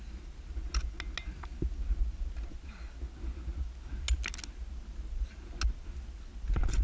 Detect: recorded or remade recorded